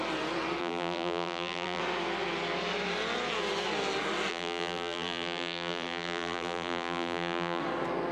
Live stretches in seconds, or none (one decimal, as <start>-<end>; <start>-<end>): 0.0-0.6; 1.8-4.3; 7.6-8.1